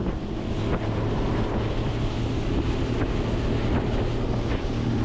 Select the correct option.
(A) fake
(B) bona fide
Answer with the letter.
B